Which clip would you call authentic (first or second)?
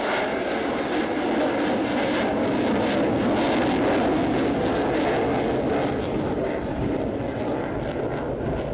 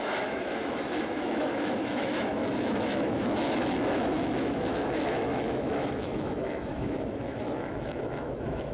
first